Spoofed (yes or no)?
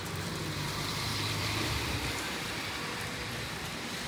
yes